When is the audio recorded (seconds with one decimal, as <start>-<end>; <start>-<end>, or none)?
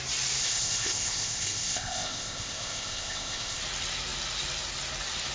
0.0-0.4; 3.6-5.3